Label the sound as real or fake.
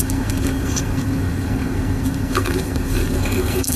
fake